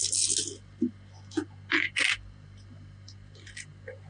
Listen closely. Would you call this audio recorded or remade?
recorded